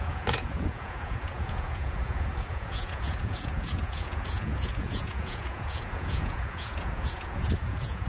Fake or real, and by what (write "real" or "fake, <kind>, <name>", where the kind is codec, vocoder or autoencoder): fake, vocoder, Vocos